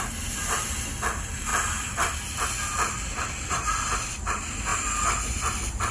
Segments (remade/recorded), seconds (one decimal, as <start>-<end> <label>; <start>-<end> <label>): 0.0-5.9 recorded